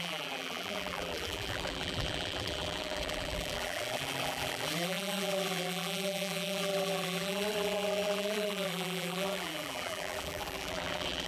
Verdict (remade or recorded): remade